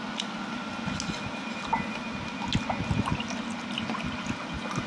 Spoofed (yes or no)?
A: no